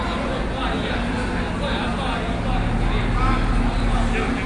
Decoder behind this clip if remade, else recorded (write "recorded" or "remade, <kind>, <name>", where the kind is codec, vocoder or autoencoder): recorded